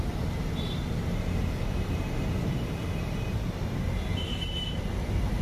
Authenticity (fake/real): fake